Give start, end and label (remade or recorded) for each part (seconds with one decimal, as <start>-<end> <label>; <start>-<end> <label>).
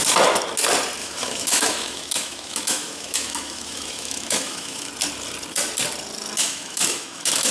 0.0-1.0 recorded; 1.0-4.9 remade; 4.9-6.4 recorded; 6.4-7.5 remade